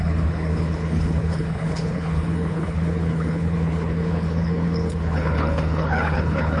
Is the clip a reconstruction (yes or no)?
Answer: yes